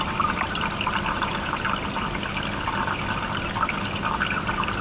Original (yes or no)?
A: yes